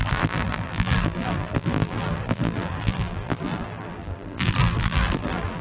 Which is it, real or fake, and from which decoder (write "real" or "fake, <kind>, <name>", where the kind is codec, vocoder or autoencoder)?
fake, vocoder, BigVGAN v2